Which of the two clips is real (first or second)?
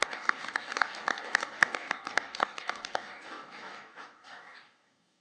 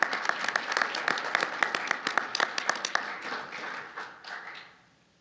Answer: second